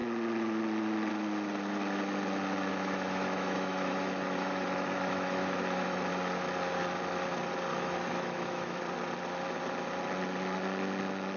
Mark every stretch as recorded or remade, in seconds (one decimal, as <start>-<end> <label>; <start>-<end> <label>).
0.0-2.7 recorded; 2.7-6.1 remade; 6.1-7.7 recorded; 7.7-8.8 remade; 8.8-11.4 recorded

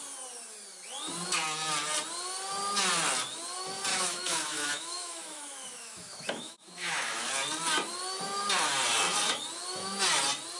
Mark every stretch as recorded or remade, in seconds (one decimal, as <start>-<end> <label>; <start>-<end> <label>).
0.0-3.9 recorded; 3.9-7.3 remade; 7.3-10.6 recorded

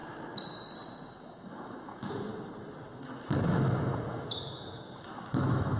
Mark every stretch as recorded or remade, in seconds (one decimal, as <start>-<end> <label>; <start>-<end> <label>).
0.0-1.2 recorded; 1.2-2.3 remade; 2.3-3.0 recorded; 3.0-5.8 remade

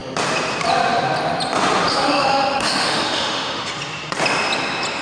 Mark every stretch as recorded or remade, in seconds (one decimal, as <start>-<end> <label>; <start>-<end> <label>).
0.0-1.9 recorded; 1.9-3.7 remade; 3.7-5.0 recorded

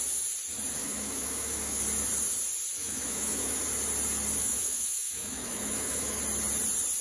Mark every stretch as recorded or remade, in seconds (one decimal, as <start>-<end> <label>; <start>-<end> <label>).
0.0-0.8 recorded; 0.8-1.8 remade; 1.8-2.8 recorded; 2.8-3.6 remade; 3.6-4.4 recorded; 4.4-6.2 remade; 6.2-7.0 recorded

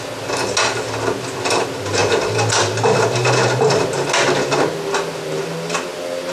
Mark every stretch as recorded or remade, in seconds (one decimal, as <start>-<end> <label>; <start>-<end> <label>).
0.0-6.3 recorded

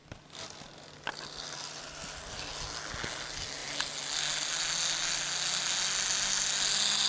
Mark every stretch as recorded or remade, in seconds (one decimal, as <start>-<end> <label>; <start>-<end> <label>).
0.0-7.1 recorded

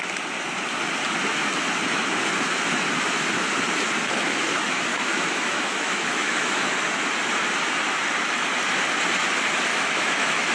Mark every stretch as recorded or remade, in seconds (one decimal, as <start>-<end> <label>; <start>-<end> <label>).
0.0-4.9 recorded; 4.9-6.7 remade; 6.7-9.7 recorded; 9.7-10.5 remade